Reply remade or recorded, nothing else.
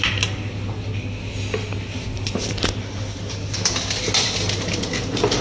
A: recorded